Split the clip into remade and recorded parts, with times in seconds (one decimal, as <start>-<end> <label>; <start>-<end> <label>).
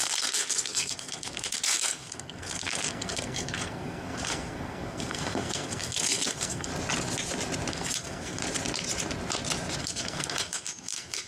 0.0-6.7 remade; 6.7-7.7 recorded; 7.7-8.4 remade; 8.4-9.8 recorded; 9.8-11.3 remade